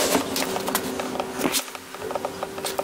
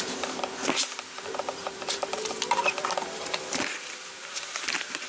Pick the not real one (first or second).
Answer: second